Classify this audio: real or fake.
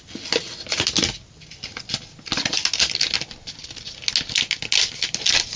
real